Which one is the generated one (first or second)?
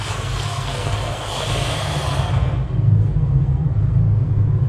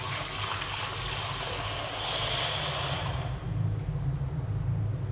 first